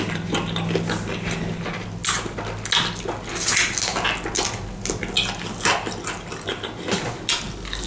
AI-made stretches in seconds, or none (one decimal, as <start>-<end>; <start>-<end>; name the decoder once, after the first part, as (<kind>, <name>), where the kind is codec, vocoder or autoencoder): none